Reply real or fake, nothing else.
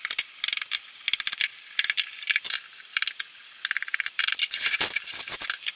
real